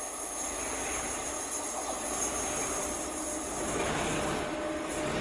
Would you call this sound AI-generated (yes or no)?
no